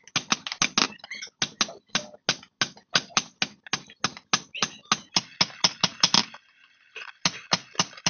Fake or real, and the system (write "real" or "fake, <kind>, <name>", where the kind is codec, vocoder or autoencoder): real